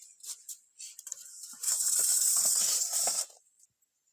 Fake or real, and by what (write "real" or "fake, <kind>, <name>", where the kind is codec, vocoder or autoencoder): real